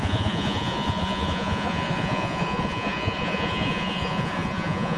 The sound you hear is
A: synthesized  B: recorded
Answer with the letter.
A